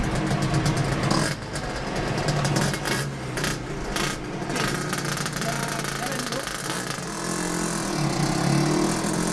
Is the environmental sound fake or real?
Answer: real